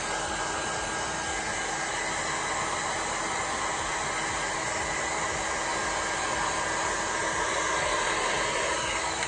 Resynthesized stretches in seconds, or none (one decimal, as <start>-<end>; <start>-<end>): none